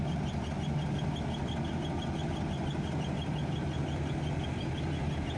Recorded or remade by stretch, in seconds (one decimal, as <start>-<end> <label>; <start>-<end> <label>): 0.0-5.4 recorded